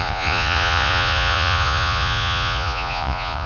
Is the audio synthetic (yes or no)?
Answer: yes